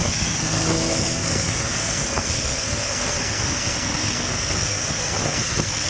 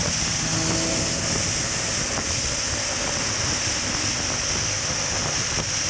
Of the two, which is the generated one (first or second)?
first